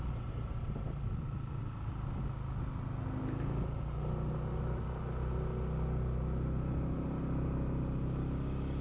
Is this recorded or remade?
recorded